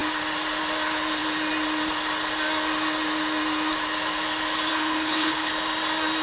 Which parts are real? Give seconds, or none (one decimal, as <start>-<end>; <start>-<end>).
0.0-4.7; 5.5-6.2